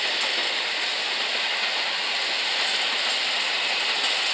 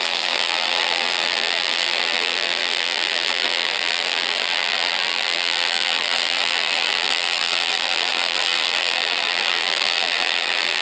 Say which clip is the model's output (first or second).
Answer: second